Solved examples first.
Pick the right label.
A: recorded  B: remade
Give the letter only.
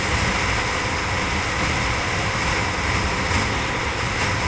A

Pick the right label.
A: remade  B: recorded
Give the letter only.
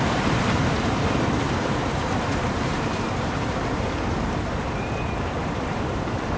A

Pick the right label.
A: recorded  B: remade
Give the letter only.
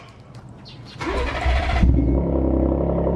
A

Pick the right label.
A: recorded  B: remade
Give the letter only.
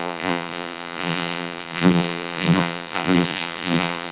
B